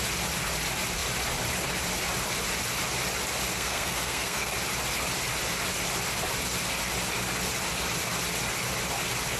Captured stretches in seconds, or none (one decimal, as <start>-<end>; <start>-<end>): 0.0-3.5; 4.5-9.4